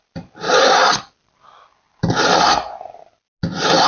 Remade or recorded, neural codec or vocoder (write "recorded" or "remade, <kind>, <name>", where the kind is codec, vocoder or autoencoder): recorded